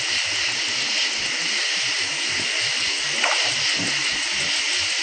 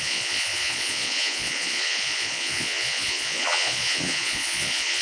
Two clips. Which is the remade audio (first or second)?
second